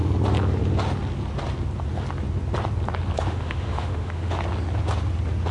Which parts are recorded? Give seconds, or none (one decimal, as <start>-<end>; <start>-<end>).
0.0-3.3; 4.3-5.5